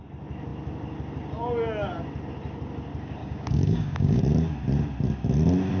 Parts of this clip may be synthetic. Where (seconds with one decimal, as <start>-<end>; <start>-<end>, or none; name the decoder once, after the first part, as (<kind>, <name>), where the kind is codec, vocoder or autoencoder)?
3.2-4.2 (codec, DAC)